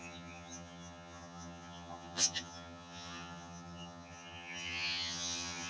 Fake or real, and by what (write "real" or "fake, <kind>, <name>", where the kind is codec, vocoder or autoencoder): fake, vocoder, HiFi-GAN